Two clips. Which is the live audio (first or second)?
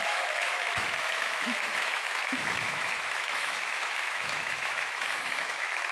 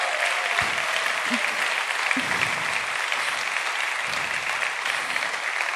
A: second